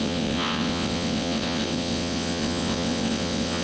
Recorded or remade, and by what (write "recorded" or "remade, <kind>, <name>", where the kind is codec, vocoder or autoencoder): remade, vocoder, WaveNeXt